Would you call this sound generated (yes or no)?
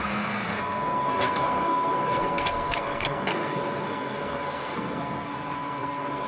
yes